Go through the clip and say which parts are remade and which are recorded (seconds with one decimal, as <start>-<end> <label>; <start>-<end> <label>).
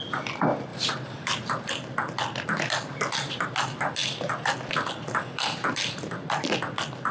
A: 0.0-0.7 recorded; 0.7-1.7 remade; 1.7-7.1 recorded